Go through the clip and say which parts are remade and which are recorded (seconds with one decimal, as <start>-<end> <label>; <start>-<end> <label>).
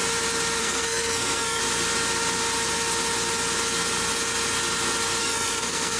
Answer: 0.0-0.6 recorded; 0.6-1.6 remade; 1.6-5.2 recorded; 5.2-6.0 remade